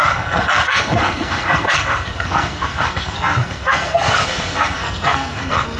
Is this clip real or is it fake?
fake